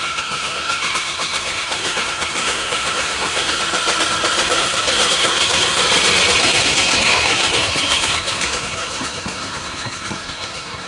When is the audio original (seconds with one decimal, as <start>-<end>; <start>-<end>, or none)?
3.6-4.4; 5.8-6.4